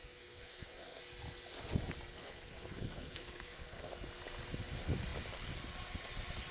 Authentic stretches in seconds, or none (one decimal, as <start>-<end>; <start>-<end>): 1.0-2.1; 3.9-6.5